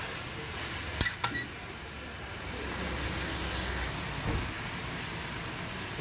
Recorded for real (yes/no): yes